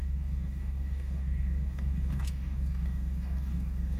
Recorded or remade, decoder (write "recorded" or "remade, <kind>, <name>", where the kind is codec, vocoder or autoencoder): remade, codec, DAC